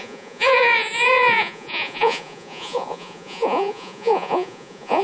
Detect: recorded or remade remade